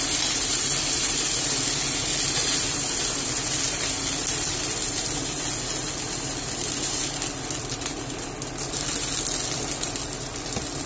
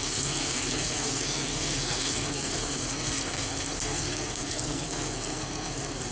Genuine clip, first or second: first